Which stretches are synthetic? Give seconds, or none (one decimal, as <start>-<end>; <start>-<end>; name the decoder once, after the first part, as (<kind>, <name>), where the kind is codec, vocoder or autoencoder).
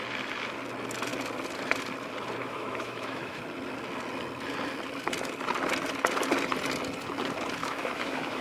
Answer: 2.4-3.4 (autoencoder, DAC-VAE); 7.6-8.4